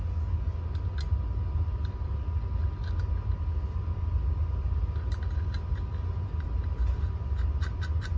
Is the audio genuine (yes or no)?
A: yes